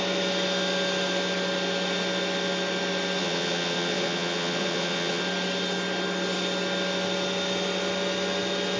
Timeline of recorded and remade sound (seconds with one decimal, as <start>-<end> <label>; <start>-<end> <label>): 0.0-3.2 recorded; 3.2-5.2 remade; 5.2-8.8 recorded